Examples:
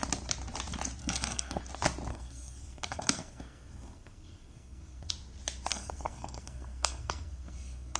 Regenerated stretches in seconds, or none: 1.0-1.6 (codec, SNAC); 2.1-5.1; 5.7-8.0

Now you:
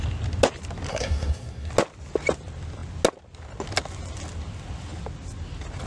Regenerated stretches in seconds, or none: 0.9-1.7 (codec, SNAC)